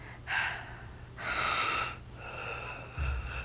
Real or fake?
real